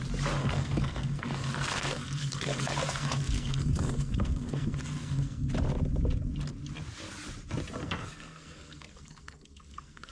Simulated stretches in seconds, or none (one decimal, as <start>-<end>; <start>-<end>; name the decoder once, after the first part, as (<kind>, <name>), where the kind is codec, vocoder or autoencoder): 0.4-5.5 (codec, SNAC); 7.8-10.1